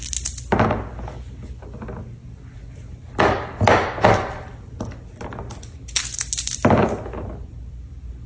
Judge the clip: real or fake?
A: real